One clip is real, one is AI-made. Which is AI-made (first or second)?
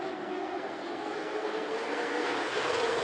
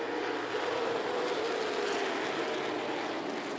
first